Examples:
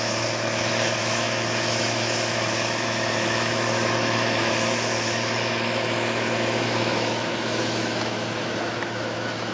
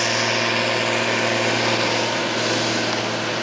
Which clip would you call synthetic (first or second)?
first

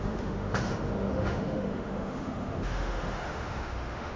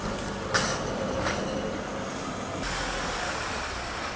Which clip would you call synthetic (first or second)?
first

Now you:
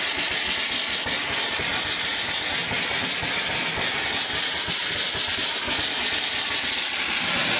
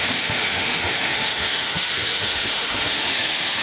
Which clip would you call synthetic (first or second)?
second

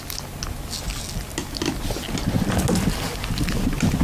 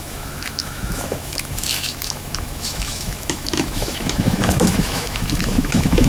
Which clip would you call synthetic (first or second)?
second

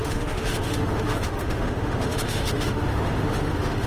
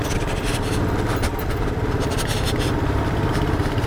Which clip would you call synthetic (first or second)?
first